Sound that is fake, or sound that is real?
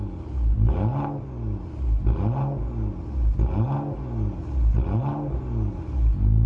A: real